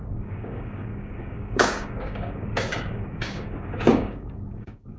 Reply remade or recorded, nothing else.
remade